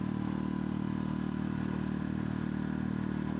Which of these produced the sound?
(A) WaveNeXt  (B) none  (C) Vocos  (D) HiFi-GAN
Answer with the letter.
B